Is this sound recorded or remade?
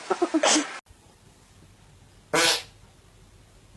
recorded